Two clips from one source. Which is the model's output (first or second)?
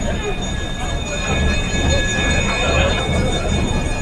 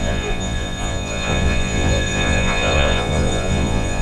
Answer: second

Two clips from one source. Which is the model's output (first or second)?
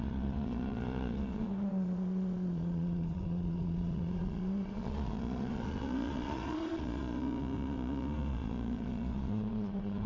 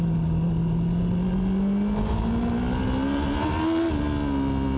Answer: first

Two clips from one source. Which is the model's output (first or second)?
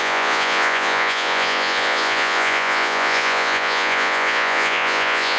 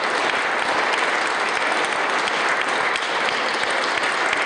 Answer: first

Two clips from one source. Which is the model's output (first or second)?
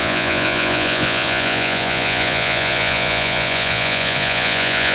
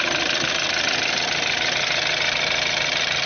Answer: first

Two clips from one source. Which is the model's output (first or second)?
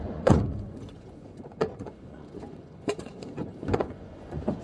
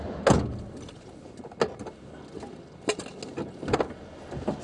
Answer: first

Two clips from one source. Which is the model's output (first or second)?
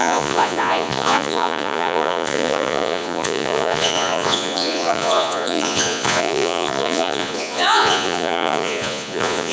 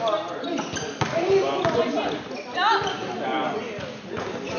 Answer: first